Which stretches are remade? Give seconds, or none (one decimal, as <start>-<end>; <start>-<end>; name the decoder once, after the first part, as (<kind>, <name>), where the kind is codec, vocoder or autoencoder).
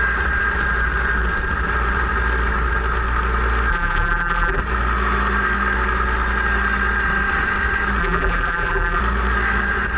3.7-4.6 (vocoder, BigVGAN v2); 8.0-9.0